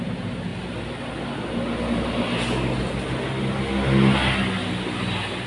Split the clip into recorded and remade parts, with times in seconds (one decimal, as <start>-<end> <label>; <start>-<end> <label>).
0.0-5.5 recorded